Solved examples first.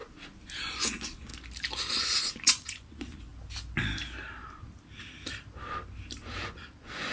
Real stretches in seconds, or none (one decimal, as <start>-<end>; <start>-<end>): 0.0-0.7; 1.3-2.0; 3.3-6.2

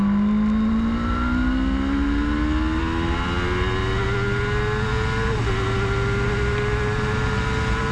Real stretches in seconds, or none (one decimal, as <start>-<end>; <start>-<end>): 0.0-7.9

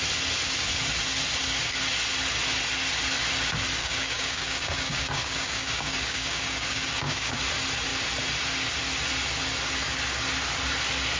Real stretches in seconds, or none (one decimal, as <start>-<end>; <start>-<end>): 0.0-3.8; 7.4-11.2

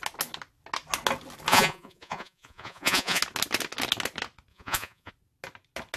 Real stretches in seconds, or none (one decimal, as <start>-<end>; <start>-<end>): 0.0-1.5; 3.2-4.5; 5.1-6.0

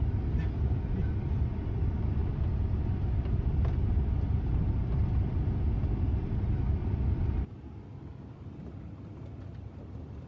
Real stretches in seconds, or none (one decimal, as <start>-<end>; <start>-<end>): 0.0-10.3